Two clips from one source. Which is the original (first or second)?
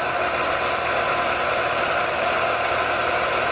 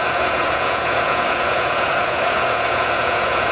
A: first